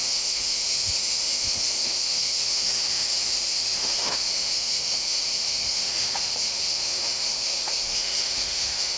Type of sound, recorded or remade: remade